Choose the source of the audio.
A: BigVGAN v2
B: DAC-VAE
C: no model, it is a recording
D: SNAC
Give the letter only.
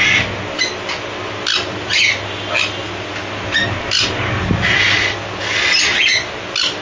C